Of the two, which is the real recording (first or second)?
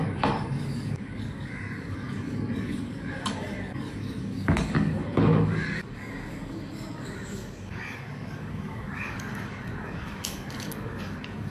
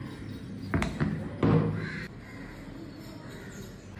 second